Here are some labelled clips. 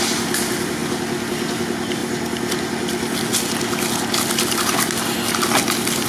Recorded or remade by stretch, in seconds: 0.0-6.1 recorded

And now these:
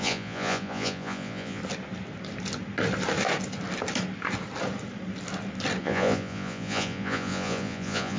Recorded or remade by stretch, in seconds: 0.0-1.6 remade; 1.6-5.8 recorded; 5.8-8.2 remade

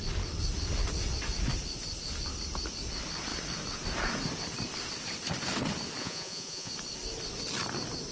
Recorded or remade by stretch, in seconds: 0.0-6.0 recorded; 6.0-6.7 remade; 6.7-8.1 recorded

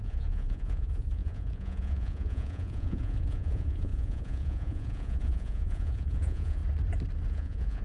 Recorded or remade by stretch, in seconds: 0.0-6.6 remade; 6.6-7.3 recorded; 7.3-7.8 remade